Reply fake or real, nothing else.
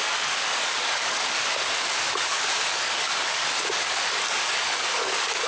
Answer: fake